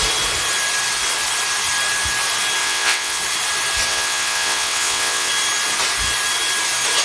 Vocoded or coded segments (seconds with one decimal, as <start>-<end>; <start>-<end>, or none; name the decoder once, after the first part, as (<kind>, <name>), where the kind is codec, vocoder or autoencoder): 2.6-3.2 (vocoder, WaveNeXt); 3.9-5.3